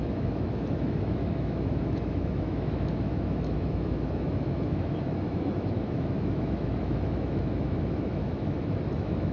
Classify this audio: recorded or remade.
remade